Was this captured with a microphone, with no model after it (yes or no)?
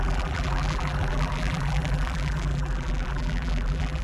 no